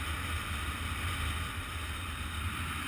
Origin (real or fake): real